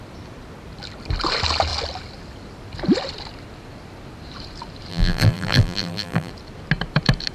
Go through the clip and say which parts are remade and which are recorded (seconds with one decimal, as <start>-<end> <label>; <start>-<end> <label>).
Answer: 0.0-4.9 recorded; 4.9-6.3 remade; 6.3-7.3 recorded